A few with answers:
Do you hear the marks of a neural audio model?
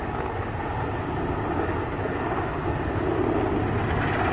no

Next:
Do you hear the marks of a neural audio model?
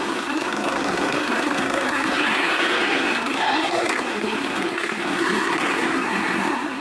yes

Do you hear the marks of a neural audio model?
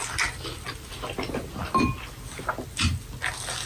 no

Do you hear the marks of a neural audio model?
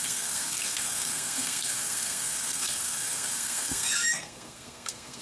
yes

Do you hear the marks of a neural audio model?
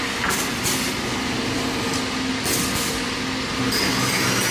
no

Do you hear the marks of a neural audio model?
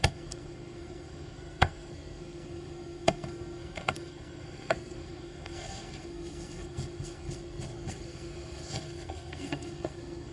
yes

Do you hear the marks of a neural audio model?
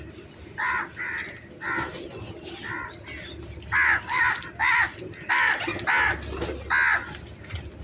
no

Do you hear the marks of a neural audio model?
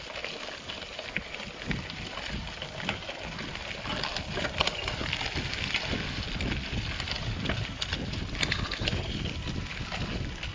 no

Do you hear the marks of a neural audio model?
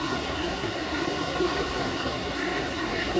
yes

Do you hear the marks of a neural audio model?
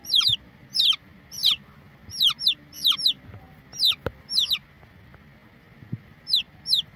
no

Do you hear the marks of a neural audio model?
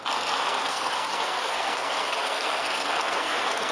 yes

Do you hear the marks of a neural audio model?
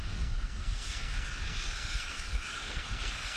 yes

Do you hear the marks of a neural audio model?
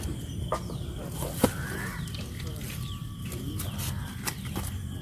no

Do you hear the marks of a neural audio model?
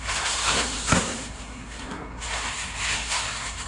yes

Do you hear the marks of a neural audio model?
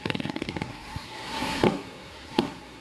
yes